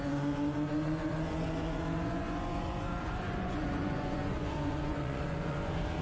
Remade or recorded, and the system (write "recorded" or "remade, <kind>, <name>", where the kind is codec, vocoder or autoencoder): remade, vocoder, Vocos